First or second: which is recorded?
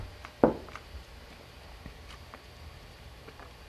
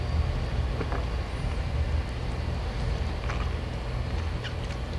second